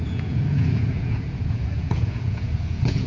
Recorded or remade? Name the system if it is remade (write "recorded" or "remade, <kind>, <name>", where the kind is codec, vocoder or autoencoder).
remade, vocoder, Vocos